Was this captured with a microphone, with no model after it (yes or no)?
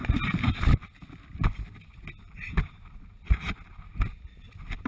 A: yes